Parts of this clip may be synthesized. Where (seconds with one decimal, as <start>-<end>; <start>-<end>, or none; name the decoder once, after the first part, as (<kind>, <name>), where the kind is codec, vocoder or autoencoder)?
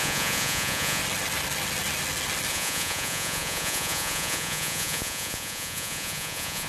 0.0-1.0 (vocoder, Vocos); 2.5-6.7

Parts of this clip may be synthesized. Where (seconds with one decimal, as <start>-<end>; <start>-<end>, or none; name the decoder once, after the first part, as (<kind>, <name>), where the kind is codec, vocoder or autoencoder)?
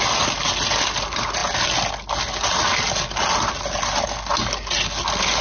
none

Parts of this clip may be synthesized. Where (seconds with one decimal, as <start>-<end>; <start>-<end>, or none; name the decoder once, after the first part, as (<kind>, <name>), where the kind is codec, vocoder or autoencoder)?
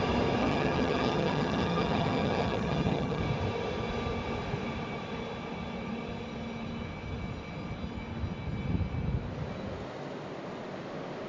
0.4-3.2 (vocoder, HiFi-GAN)